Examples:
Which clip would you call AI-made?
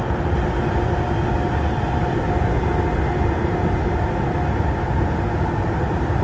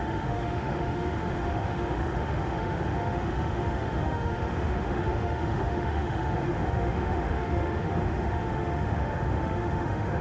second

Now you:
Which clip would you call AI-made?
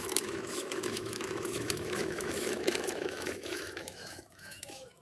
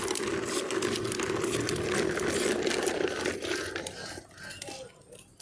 first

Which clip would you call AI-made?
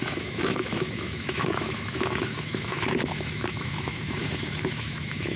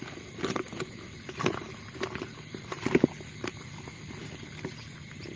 first